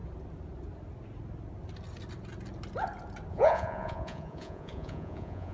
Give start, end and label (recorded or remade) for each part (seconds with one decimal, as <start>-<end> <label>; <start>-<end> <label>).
0.0-3.3 recorded; 3.3-5.5 remade